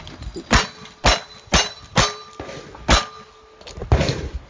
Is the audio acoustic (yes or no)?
yes